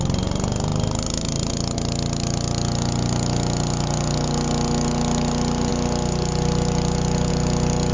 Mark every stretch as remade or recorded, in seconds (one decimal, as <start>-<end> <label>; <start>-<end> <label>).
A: 0.0-7.9 recorded

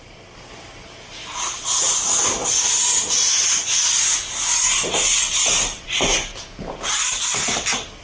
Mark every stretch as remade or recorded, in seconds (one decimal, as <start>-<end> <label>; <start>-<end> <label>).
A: 0.0-6.3 recorded; 6.3-7.0 remade; 7.0-8.0 recorded

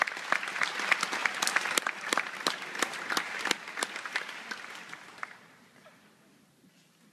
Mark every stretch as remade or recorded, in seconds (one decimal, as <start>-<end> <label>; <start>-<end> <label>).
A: 0.0-7.1 recorded

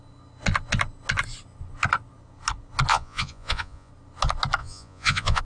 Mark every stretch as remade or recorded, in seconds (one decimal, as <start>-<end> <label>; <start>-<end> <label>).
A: 0.0-2.9 recorded; 2.9-3.9 remade; 3.9-4.6 recorded; 4.6-5.4 remade